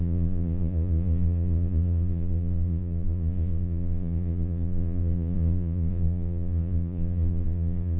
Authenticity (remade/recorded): remade